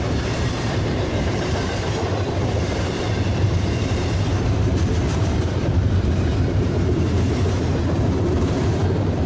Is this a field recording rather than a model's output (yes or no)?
no